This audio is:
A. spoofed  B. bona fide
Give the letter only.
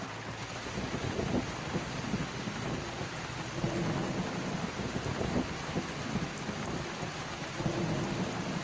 B